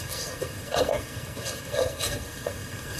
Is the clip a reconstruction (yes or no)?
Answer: yes